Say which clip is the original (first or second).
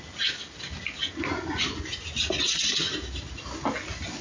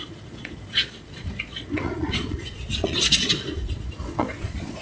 first